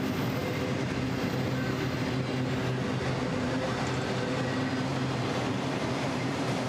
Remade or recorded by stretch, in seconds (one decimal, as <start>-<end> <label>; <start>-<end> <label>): 0.0-4.9 recorded; 4.9-6.7 remade